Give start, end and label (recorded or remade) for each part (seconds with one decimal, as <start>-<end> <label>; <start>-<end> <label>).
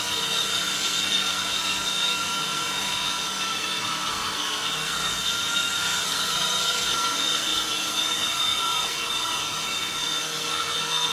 0.0-11.1 remade